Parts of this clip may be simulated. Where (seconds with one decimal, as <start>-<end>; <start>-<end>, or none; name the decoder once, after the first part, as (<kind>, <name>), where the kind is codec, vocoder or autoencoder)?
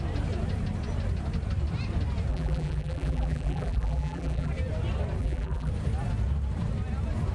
2.3-4.5 (vocoder, BigVGAN v2); 5.2-5.7